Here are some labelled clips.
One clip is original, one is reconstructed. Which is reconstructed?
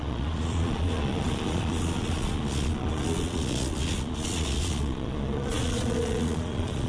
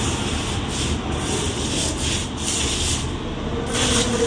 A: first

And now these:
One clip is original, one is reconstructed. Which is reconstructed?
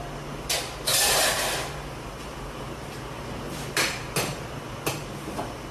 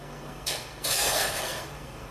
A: second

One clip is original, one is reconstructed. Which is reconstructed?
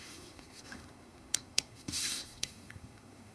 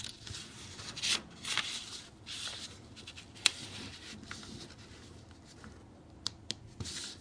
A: first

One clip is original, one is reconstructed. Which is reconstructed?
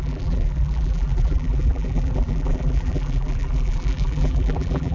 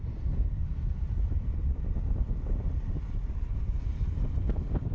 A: first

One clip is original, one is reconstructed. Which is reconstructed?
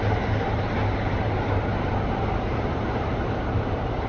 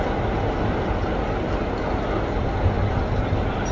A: first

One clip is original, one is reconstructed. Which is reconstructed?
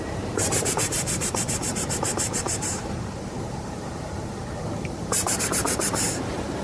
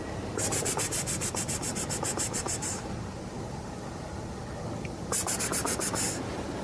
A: first